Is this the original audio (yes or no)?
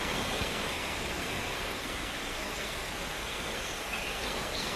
no